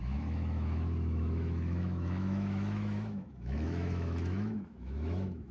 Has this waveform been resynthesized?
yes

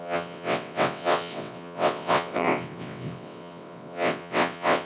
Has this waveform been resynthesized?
yes